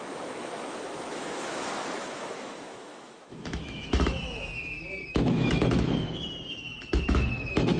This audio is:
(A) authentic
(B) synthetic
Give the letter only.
B